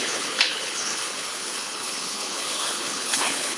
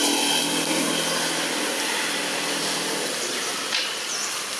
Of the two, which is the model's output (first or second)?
first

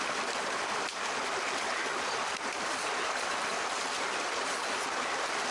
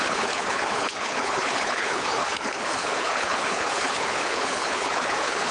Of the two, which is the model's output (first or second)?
second